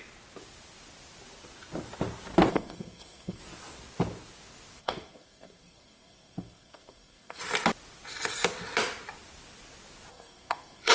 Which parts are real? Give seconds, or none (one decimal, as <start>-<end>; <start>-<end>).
0.0-2.5; 3.4-4.8; 7.4-10.1